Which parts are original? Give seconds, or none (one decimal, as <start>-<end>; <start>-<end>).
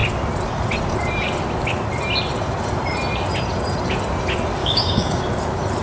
0.0-4.6; 5.2-5.8